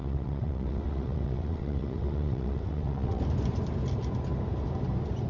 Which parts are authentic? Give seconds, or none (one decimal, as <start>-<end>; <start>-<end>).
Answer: 3.2-5.3